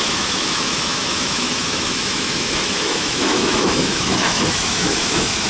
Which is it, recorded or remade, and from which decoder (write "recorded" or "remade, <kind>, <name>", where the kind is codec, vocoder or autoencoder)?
remade, autoencoder, DAC-VAE